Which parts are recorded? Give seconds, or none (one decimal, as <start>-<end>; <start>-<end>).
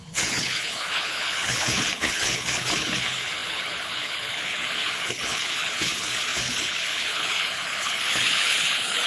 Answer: none